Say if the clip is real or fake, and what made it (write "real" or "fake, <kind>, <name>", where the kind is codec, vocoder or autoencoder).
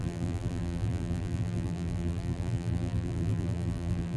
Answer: fake, vocoder, BigVGAN v2